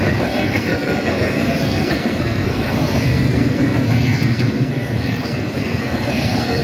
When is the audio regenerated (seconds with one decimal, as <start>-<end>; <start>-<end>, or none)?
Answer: 0.0-6.6